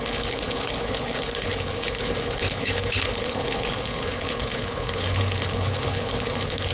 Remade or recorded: remade